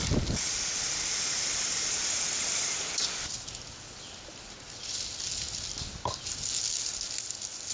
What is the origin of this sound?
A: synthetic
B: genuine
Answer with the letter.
B